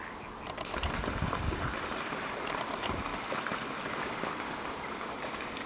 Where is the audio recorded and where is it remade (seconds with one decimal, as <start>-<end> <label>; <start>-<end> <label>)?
0.0-5.7 recorded